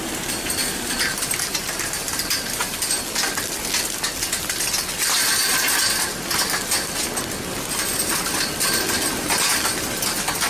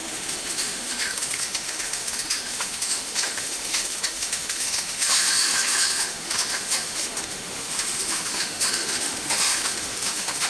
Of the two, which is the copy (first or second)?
second